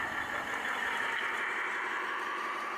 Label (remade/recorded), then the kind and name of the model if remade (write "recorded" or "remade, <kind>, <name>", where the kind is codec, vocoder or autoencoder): recorded